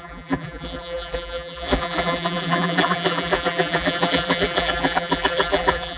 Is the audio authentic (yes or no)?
no